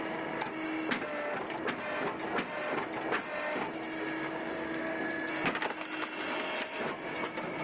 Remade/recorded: recorded